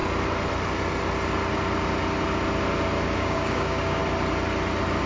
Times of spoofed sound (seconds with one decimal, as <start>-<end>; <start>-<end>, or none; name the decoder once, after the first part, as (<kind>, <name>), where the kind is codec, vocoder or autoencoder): 3.1-4.0 (codec, DAC)